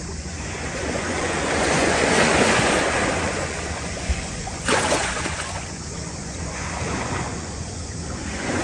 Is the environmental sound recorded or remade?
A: remade